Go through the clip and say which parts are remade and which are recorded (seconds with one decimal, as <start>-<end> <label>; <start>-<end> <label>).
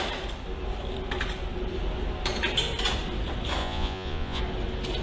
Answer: 0.0-3.6 recorded; 3.6-4.4 remade; 4.4-5.0 recorded